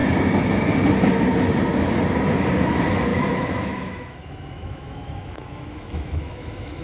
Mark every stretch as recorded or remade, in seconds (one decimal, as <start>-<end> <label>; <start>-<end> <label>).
0.0-2.6 recorded; 2.6-6.8 remade